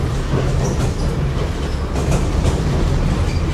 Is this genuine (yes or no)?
yes